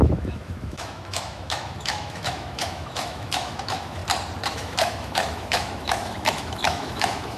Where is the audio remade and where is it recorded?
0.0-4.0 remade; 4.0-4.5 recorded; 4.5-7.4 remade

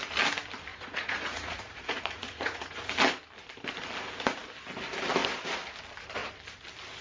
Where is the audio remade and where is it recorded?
0.0-0.7 recorded; 0.7-2.9 remade; 2.9-7.0 recorded

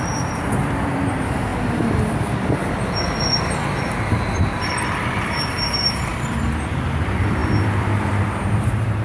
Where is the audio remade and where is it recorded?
0.0-1.5 remade; 1.5-5.0 recorded; 5.0-6.1 remade; 6.1-7.0 recorded; 7.0-9.0 remade